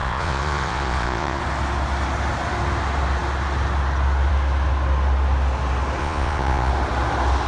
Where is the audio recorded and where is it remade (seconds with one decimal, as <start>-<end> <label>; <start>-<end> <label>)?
0.0-1.4 remade; 1.4-6.0 recorded; 6.0-6.7 remade; 6.7-7.5 recorded